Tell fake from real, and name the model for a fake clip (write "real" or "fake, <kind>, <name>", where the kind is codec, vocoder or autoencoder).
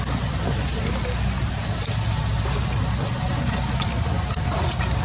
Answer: fake, vocoder, BigVGAN v2